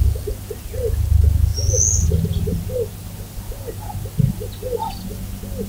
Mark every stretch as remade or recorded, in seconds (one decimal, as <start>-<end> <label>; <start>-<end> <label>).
0.0-5.7 recorded